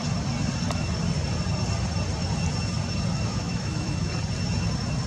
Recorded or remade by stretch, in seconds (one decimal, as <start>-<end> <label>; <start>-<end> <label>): 0.0-3.3 recorded; 3.3-4.1 remade; 4.1-5.1 recorded